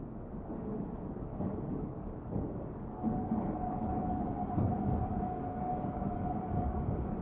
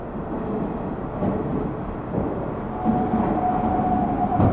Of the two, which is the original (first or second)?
second